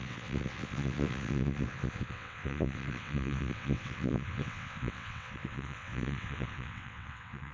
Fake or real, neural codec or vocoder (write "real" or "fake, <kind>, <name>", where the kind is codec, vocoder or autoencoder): fake, vocoder, WaveNeXt